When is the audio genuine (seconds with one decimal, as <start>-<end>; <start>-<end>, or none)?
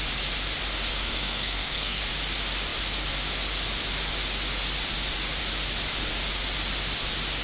0.0-1.0; 2.0-7.4